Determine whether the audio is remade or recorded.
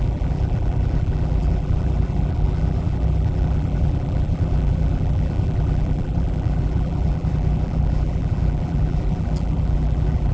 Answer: remade